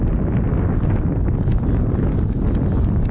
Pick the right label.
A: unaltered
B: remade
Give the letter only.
A